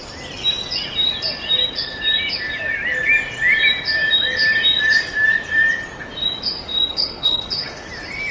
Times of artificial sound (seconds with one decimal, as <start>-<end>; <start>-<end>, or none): 6.9-7.9